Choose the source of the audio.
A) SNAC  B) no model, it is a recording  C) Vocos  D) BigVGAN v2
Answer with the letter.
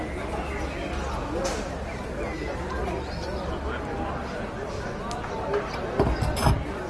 B